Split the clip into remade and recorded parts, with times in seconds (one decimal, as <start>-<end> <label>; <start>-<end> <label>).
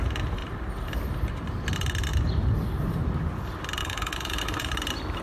0.0-3.8 recorded; 3.8-4.7 remade; 4.7-5.2 recorded